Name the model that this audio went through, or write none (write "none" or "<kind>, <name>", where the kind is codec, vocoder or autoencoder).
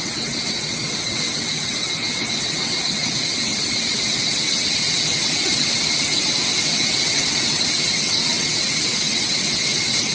vocoder, WaveNeXt